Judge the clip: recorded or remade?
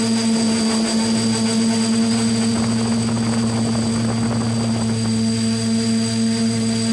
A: recorded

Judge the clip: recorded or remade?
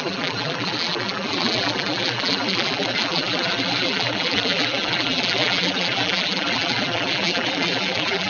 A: remade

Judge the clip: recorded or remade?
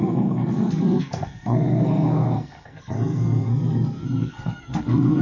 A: remade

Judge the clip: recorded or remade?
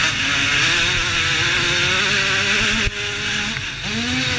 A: recorded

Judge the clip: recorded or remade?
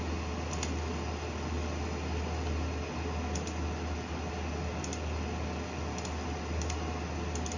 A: recorded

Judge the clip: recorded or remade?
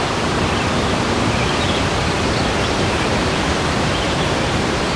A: remade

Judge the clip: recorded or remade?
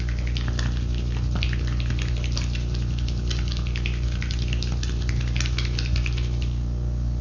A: recorded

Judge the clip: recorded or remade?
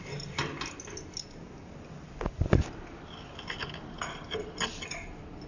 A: recorded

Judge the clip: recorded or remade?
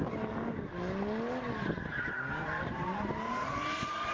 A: recorded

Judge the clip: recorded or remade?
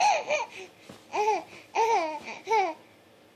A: recorded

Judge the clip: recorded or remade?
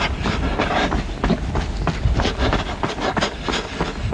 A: recorded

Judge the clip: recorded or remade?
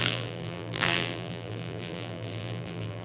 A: remade